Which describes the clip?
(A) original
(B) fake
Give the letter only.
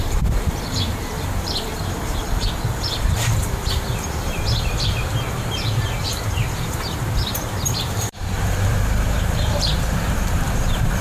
B